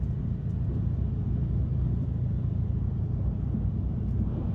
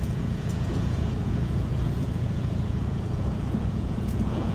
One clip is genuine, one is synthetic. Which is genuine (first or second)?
first